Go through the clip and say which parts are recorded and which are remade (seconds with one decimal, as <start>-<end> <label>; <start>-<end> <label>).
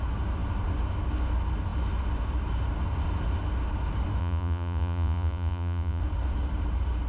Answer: 0.0-4.2 recorded; 4.2-6.0 remade; 6.0-7.1 recorded